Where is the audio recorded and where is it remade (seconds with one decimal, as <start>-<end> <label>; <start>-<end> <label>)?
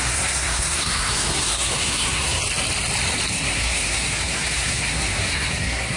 0.0-2.4 remade; 2.4-3.3 recorded; 3.3-6.0 remade